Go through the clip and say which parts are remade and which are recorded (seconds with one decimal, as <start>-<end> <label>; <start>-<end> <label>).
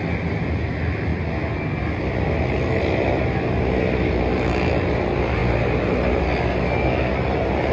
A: 0.0-7.7 recorded